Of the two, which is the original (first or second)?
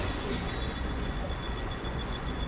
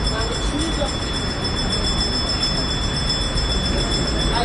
second